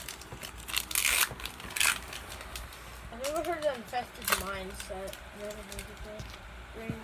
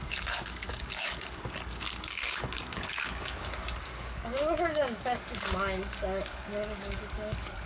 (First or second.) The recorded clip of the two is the first